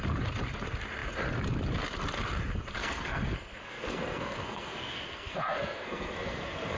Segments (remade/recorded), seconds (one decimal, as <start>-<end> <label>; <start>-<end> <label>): 0.0-2.8 recorded; 2.8-6.8 remade